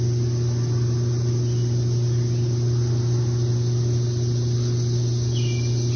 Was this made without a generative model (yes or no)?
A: yes